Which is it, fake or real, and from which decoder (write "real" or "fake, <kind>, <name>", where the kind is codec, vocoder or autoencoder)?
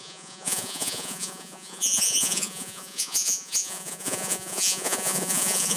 fake, vocoder, Vocos